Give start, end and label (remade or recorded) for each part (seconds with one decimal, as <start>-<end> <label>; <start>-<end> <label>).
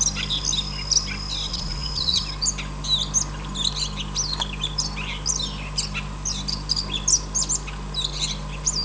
0.0-1.5 recorded; 1.5-2.2 remade; 2.2-8.8 recorded